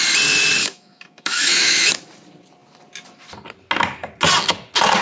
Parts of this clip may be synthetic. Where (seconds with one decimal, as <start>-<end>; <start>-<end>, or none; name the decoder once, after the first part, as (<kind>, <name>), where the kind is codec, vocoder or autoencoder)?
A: 0.6-1.9 (autoencoder, DAC-VAE)